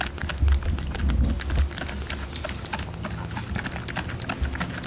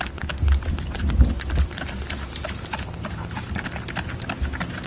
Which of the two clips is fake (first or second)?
second